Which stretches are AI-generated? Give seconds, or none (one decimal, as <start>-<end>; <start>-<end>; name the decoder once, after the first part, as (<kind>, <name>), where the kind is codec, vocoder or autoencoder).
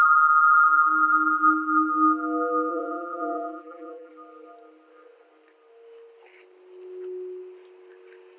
2.7-4.1 (vocoder, BigVGAN v2)